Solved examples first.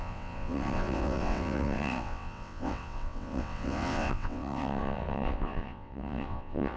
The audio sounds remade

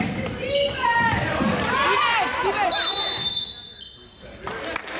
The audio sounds recorded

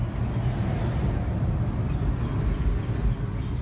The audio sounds recorded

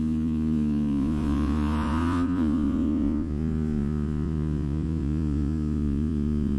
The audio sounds remade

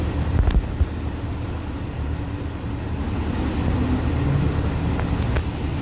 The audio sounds recorded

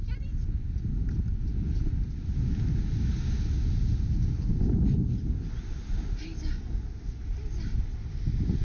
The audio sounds recorded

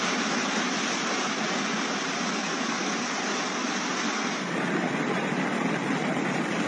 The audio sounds recorded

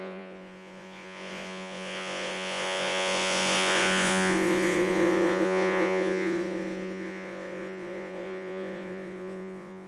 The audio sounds remade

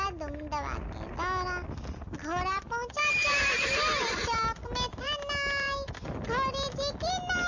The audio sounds recorded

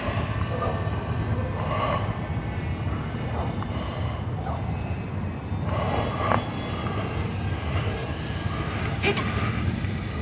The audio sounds recorded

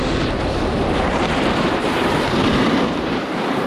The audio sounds remade